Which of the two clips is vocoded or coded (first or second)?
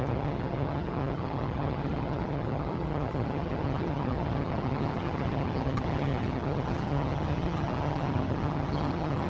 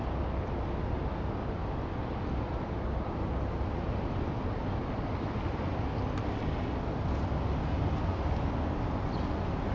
first